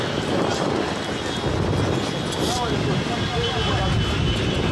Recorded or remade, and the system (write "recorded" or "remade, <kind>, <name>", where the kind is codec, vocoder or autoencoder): recorded